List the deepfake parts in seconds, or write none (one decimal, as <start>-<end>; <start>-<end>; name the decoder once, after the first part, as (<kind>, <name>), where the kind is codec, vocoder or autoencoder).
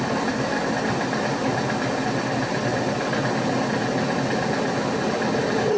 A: none